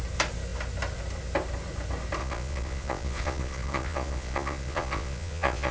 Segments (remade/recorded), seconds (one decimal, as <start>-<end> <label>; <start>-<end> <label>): 0.0-2.2 recorded; 2.2-5.7 remade